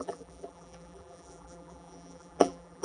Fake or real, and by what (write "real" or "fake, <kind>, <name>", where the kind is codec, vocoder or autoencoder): fake, vocoder, BigVGAN v2